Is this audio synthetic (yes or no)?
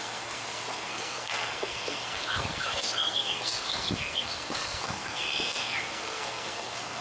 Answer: yes